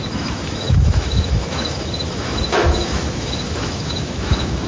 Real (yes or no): no